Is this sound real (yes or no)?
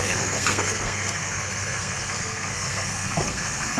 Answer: no